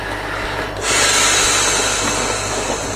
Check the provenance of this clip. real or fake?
real